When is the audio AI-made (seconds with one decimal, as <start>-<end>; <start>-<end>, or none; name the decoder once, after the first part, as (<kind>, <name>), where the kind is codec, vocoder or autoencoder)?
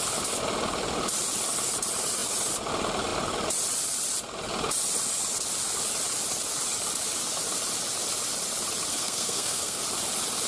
8.9-9.8 (codec, SNAC)